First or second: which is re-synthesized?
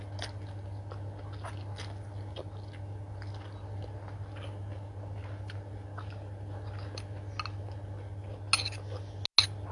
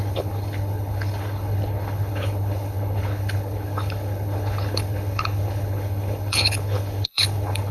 second